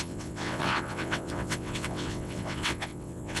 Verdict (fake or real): fake